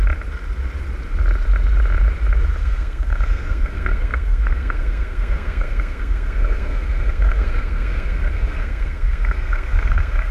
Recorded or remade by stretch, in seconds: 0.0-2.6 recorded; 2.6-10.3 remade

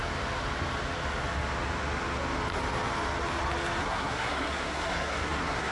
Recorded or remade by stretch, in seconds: 0.0-3.8 recorded; 3.8-5.7 remade